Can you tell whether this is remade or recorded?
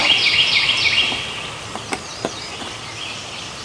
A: recorded